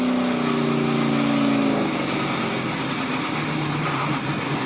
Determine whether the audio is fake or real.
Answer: real